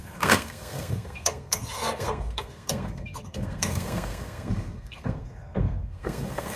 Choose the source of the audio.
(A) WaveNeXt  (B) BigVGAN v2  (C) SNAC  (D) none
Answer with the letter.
C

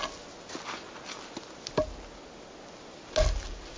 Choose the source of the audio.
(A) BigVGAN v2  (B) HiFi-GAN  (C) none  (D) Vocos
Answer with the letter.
C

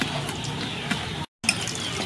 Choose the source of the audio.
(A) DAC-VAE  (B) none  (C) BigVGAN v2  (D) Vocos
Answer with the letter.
B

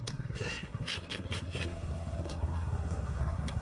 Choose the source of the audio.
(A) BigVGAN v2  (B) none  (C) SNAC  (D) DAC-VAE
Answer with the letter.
C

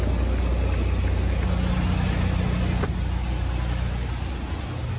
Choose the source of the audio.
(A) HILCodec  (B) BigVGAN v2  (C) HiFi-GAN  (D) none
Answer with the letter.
D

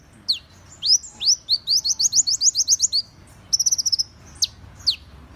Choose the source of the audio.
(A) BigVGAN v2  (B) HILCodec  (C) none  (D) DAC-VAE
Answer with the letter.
C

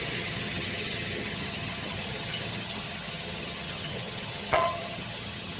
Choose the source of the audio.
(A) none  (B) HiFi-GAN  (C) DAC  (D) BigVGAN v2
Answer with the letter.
B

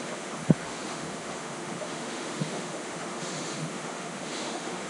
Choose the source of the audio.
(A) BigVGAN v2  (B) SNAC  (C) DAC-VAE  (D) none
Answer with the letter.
C